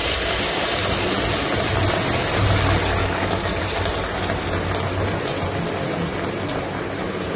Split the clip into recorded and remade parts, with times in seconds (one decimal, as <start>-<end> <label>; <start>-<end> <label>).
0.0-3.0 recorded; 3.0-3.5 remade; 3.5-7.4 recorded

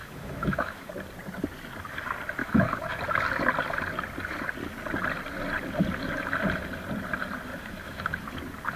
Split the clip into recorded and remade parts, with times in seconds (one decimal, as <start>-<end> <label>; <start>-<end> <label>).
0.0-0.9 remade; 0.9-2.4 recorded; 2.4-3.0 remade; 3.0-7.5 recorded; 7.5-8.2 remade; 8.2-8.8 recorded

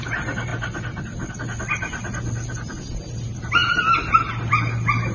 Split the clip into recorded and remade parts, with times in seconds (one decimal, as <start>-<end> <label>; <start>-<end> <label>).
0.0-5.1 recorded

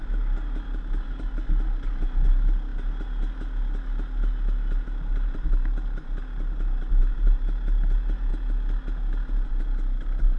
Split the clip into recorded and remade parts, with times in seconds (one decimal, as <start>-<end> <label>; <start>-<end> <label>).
0.0-10.4 recorded

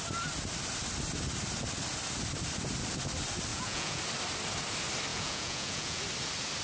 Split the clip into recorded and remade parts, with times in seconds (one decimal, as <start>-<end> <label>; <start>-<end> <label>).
0.0-3.5 recorded; 3.5-4.0 remade; 4.0-5.1 recorded; 5.1-6.0 remade; 6.0-6.6 recorded

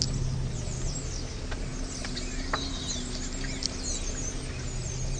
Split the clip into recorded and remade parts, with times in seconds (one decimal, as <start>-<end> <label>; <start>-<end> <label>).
0.0-5.2 recorded

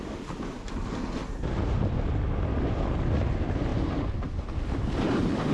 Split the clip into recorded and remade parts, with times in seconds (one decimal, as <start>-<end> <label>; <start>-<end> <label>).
0.0-5.5 recorded

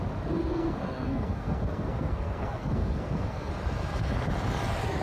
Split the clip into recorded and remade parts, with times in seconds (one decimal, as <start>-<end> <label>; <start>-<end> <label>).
0.0-0.5 recorded; 0.5-3.5 remade; 3.5-5.0 recorded